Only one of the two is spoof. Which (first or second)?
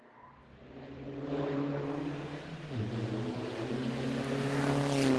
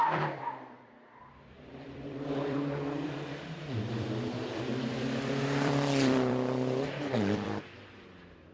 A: second